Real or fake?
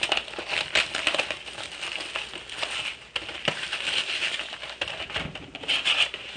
real